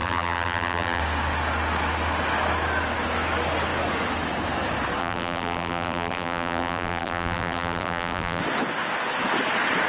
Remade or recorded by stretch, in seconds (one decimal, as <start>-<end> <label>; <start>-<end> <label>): 0.0-1.0 remade; 1.0-5.0 recorded; 5.0-8.4 remade; 8.4-9.9 recorded